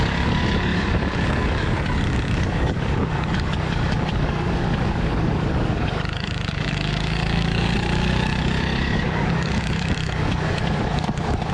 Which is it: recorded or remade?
remade